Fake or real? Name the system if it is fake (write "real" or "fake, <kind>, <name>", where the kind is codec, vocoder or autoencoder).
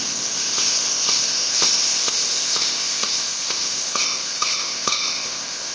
fake, codec, ZipCodec